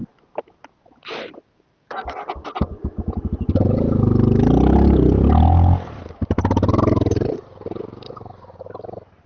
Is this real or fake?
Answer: real